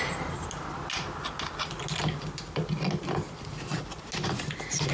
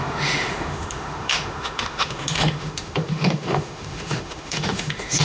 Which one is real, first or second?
first